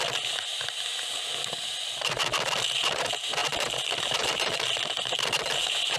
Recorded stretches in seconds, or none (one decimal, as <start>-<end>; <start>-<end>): 0.0-6.0